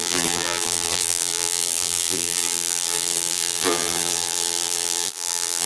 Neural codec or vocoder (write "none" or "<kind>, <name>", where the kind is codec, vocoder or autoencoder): vocoder, BigVGAN v2